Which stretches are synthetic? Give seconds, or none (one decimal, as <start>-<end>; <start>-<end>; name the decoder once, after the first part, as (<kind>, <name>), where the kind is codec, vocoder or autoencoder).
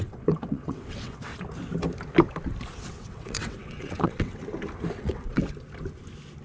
0.0-1.3 (vocoder, WaveNeXt); 3.0-4.4; 5.0-5.4